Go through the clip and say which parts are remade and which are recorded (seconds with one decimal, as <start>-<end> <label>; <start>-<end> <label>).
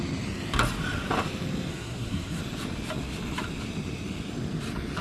0.0-1.7 recorded; 1.7-2.4 remade; 2.4-5.0 recorded